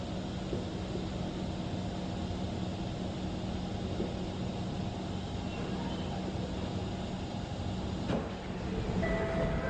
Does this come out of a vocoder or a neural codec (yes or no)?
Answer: no